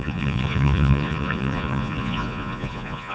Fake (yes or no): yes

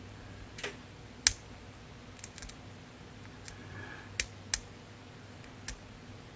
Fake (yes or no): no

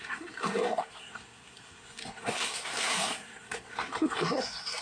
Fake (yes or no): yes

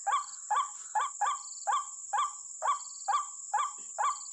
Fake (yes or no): no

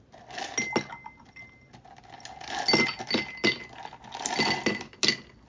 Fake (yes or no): no